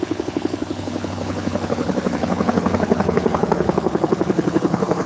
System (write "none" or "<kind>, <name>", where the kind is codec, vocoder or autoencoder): codec, HILCodec